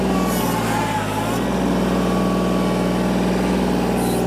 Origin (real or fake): real